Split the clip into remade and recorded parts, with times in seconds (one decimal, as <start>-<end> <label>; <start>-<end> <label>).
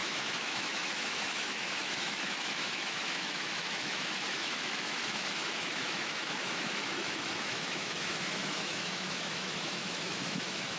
0.0-10.8 remade